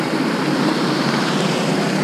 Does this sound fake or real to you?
fake